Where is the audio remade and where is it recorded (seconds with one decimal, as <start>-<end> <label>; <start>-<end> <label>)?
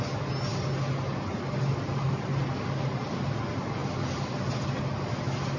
0.0-5.6 recorded